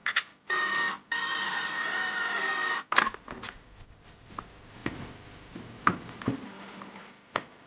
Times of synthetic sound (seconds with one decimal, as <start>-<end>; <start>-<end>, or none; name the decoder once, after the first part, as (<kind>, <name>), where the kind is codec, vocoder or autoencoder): none

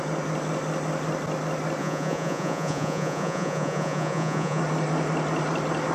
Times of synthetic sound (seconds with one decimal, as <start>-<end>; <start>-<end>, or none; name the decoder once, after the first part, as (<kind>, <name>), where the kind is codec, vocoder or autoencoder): 1.8-4.6 (vocoder, Vocos)

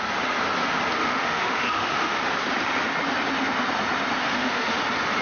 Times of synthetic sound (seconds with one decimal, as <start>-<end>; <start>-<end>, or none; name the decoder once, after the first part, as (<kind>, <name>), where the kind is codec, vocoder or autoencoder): 1.0-2.2 (autoencoder, DAC-VAE); 4.2-4.8

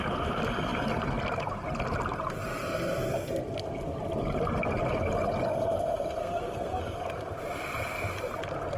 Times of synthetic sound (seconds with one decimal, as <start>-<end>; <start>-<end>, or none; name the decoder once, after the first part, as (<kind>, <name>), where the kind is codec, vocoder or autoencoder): 6.2-6.8 (codec, SNAC)

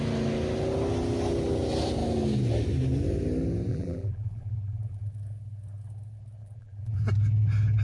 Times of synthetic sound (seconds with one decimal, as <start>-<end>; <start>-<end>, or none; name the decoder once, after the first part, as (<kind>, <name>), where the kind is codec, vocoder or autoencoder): 3.7-5.1 (vocoder, BigVGAN v2); 6.4-7.0